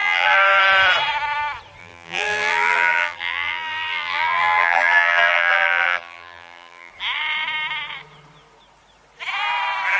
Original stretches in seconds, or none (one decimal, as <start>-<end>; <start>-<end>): 0.6-1.8; 6.9-10.0

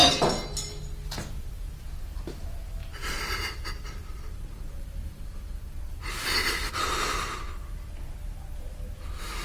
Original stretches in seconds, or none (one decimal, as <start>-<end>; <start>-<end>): 0.0-2.8; 6.7-9.4

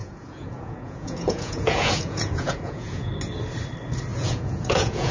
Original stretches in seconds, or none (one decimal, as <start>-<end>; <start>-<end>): 3.1-4.1

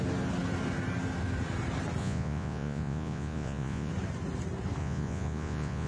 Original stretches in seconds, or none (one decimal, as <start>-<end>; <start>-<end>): 0.0-2.0; 3.9-4.8

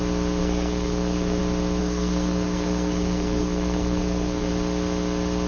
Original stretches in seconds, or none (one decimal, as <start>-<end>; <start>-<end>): 0.0-0.4; 1.4-1.8; 4.5-5.5

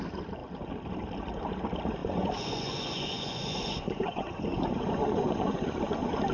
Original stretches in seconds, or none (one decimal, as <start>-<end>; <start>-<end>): 0.0-2.0; 5.8-6.3

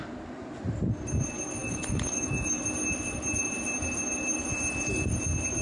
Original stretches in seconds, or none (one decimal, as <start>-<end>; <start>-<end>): 0.0-1.6; 2.6-5.6

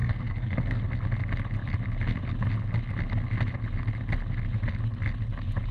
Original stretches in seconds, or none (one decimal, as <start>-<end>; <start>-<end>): 0.8-5.7